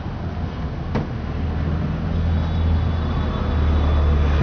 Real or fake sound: real